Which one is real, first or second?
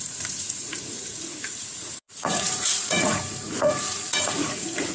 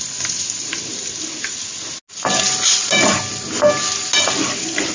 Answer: second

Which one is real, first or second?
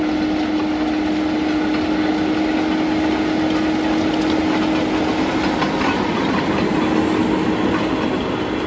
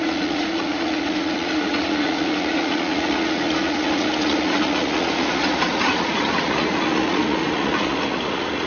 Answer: first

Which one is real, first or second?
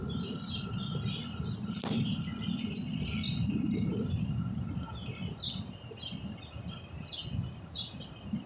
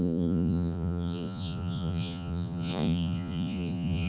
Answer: first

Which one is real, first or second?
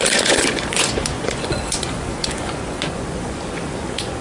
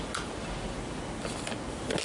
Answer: second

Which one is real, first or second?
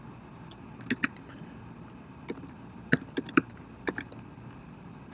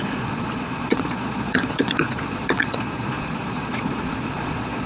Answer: first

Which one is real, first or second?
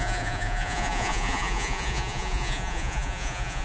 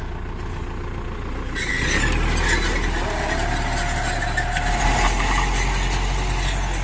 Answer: second